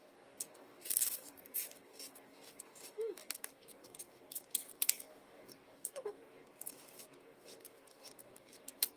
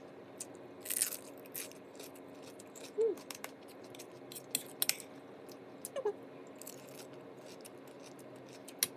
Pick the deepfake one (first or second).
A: first